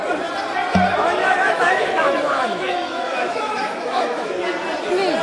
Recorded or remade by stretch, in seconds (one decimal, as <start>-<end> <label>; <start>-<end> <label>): 0.0-1.2 recorded; 1.2-4.3 remade; 4.3-5.2 recorded